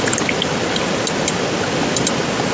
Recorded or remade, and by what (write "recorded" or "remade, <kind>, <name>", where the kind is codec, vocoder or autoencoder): recorded